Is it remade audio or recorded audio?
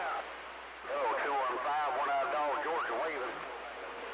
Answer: recorded